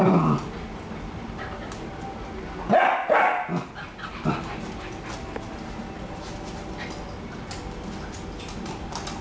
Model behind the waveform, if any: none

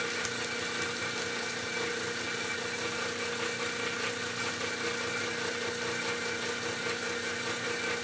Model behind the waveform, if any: none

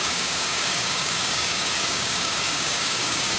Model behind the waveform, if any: codec, DAC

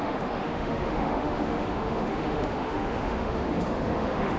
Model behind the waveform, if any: autoencoder, DAC-VAE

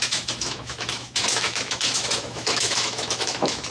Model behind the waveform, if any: autoencoder, DAC-VAE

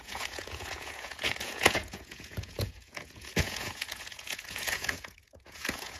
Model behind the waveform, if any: vocoder, Vocos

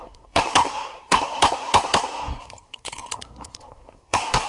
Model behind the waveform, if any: codec, SNAC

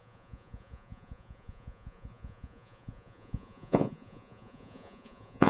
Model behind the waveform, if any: vocoder, Vocos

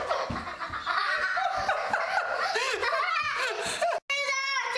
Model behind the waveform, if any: none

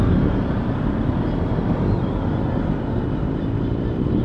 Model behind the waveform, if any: vocoder, BigVGAN v2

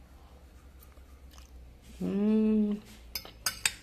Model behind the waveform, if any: none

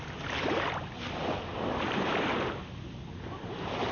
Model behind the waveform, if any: none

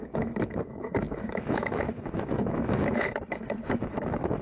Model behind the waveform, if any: autoencoder, DAC-VAE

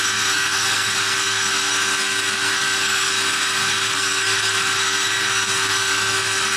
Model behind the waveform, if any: codec, SNAC